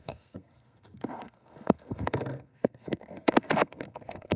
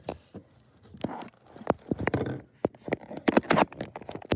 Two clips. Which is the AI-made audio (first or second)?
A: first